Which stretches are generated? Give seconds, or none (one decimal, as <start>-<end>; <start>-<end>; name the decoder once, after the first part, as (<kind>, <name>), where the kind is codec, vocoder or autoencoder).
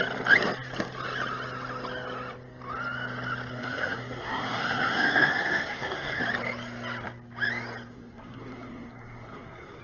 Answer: 3.5-6.2 (codec, SNAC); 7.9-9.8